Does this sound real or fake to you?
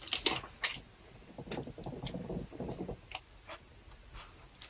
real